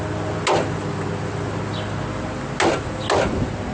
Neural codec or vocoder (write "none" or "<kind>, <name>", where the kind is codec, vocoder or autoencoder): none